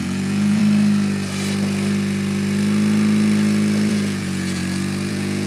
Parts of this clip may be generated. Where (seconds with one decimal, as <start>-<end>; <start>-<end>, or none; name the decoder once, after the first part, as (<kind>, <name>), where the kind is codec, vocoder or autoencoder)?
0.0-0.6 (vocoder, Vocos); 3.9-4.6; 5.1-5.5